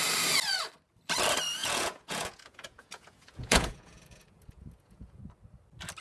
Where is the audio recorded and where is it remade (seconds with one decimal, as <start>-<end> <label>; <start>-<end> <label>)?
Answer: 0.0-1.6 recorded; 1.6-5.2 remade; 5.2-6.0 recorded